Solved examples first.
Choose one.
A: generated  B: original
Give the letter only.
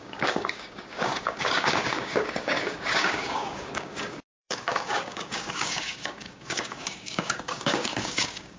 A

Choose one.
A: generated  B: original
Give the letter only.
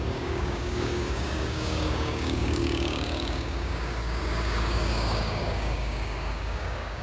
A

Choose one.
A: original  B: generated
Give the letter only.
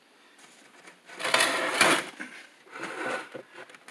A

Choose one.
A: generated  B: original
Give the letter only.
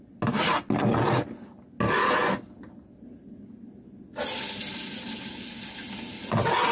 B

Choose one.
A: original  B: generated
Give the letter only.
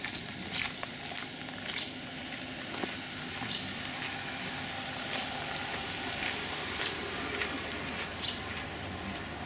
A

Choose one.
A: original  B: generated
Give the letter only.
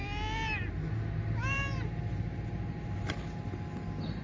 A